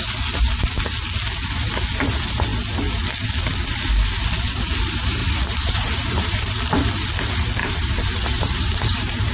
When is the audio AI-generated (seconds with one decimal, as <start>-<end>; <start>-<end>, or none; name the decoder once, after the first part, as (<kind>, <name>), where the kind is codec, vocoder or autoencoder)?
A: 5.2-6.4 (vocoder, BigVGAN v2); 7.6-9.3